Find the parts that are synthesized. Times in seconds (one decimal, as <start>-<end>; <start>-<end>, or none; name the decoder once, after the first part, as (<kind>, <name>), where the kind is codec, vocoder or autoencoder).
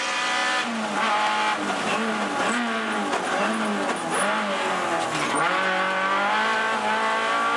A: none